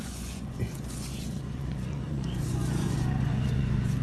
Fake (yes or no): yes